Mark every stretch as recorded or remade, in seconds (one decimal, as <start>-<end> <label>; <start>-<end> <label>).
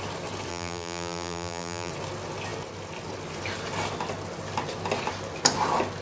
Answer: 0.0-0.5 recorded; 0.5-1.9 remade; 1.9-6.0 recorded